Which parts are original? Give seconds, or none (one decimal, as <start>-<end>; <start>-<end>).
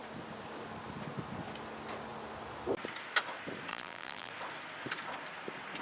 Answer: 0.0-3.7; 4.3-5.8